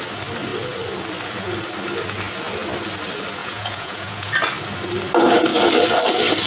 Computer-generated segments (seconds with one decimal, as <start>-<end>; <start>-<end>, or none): 3.4-4.3